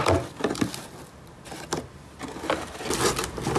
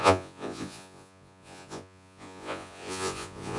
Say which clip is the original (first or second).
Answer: first